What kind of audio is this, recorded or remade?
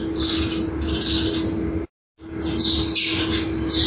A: recorded